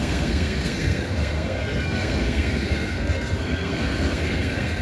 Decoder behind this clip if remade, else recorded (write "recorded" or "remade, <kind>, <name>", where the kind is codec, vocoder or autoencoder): remade, codec, SNAC